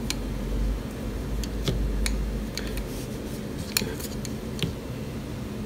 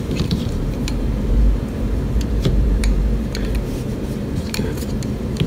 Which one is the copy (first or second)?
second